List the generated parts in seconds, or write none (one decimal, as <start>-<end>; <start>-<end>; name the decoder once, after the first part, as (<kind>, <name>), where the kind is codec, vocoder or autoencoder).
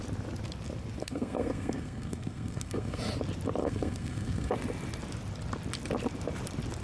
1.0-3.0 (codec, SNAC); 3.6-4.5